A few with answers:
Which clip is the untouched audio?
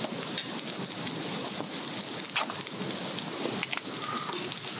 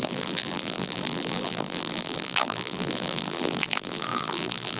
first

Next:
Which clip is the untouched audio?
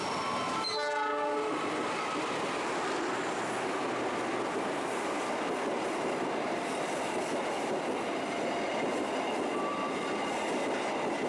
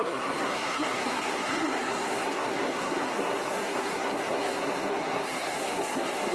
first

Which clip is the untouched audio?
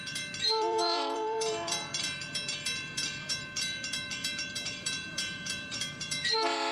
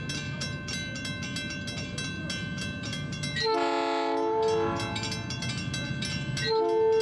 second